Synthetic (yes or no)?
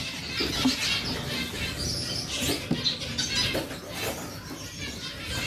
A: no